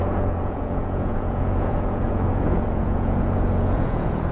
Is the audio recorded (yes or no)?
no